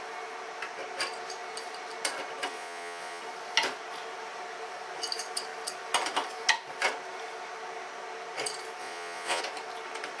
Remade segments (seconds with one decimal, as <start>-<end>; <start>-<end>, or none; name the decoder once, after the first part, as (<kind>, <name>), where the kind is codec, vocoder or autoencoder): 2.5-3.2 (vocoder, Vocos); 8.8-9.4